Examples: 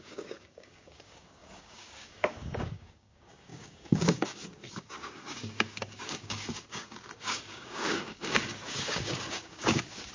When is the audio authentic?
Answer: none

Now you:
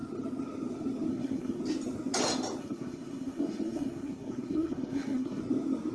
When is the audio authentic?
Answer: 0.0-1.1; 1.6-2.6; 5.4-5.9

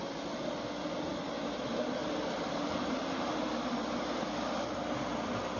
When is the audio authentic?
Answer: 0.0-5.6

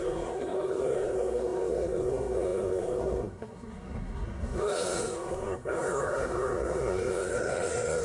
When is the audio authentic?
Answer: none

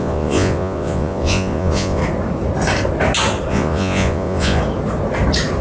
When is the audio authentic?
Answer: 2.0-3.5; 4.6-5.6

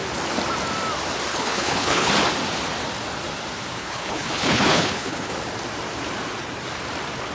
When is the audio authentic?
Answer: 0.0-1.3; 2.1-3.8; 5.3-7.3

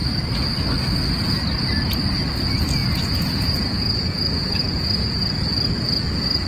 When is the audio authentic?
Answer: 0.0-2.8; 5.3-6.5

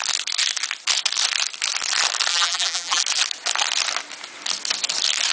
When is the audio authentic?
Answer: 0.0-2.3; 3.0-5.3